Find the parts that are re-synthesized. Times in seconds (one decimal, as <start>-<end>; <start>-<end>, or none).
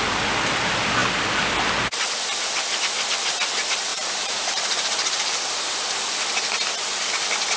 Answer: 3.9-5.7